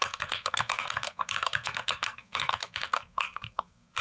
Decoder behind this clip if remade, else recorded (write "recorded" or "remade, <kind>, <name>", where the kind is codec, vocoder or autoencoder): remade, codec, SNAC